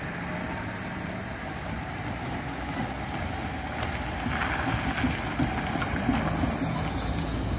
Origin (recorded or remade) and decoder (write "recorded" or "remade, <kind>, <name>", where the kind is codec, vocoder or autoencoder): recorded